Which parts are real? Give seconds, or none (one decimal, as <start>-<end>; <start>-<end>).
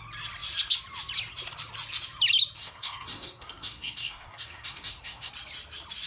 0.0-2.6; 5.3-6.1